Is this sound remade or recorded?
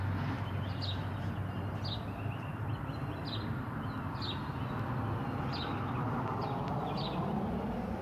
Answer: recorded